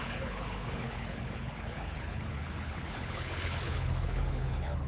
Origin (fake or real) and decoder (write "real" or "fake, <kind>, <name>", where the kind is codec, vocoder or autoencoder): fake, codec, HILCodec